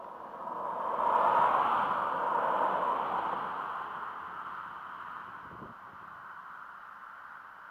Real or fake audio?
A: real